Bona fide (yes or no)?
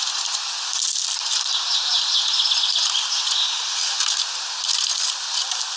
yes